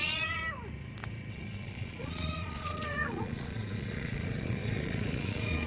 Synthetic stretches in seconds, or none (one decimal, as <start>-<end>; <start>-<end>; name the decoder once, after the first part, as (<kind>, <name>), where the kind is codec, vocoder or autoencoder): 0.0-0.4 (vocoder, Vocos); 1.3-5.7